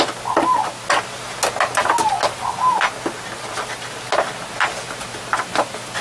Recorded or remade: recorded